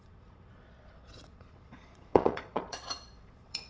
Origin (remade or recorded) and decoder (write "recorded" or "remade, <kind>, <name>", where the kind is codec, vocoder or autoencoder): remade, vocoder, Vocos